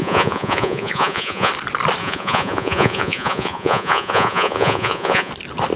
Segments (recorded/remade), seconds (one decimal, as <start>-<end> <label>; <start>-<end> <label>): 0.0-1.5 remade; 1.5-2.0 recorded; 2.0-5.3 remade; 5.3-5.8 recorded

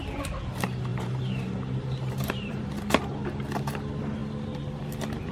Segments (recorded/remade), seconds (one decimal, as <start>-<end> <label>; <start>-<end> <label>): 0.0-0.9 recorded; 0.9-2.7 remade; 2.7-5.3 recorded

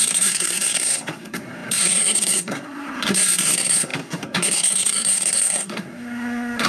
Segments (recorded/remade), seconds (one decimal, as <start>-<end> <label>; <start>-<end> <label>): 0.0-6.7 remade

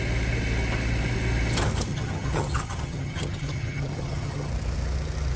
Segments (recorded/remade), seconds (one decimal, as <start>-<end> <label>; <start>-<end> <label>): 0.0-1.9 recorded; 1.9-4.5 remade; 4.5-5.4 recorded

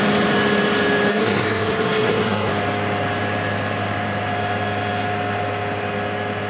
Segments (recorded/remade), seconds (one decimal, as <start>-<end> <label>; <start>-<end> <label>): 0.0-1.1 recorded; 1.1-2.5 remade; 2.5-6.5 recorded

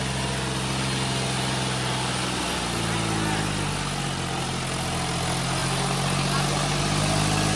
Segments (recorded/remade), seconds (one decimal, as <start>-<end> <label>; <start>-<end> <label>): 0.0-7.6 recorded

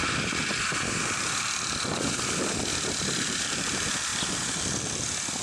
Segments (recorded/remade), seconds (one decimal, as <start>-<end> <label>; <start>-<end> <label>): 0.0-5.4 recorded